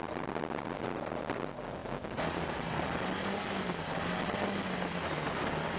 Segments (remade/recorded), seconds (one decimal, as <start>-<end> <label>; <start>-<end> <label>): 0.0-5.8 recorded